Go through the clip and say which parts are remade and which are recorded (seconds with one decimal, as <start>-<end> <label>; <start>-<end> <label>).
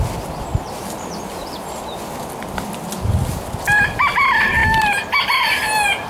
0.0-0.5 recorded; 0.5-2.0 remade; 2.0-6.1 recorded